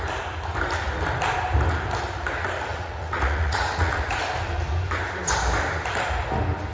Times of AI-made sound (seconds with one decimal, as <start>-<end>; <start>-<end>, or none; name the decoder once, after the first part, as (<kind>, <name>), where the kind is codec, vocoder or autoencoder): 2.7-4.2 (vocoder, Vocos)